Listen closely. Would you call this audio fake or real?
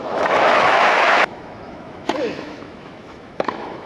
fake